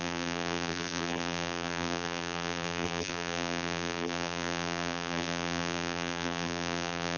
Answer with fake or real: fake